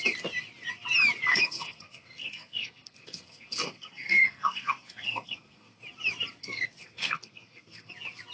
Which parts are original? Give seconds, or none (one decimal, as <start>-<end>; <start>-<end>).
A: 0.0-1.3; 5.8-6.4; 7.9-8.3